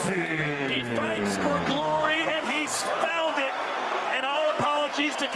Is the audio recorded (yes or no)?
no